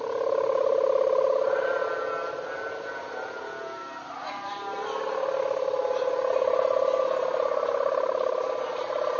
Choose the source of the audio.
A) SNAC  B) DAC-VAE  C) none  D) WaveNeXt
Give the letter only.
C